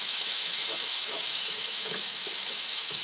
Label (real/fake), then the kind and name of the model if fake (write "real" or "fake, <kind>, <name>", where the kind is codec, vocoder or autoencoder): fake, autoencoder, DAC-VAE